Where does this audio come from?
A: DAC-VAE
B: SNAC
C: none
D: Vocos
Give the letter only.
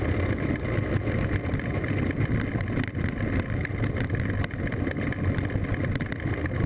C